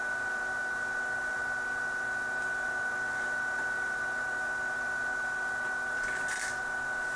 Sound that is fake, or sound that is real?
real